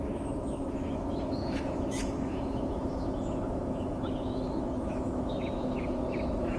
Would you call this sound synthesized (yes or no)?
yes